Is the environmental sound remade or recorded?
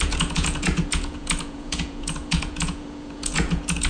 remade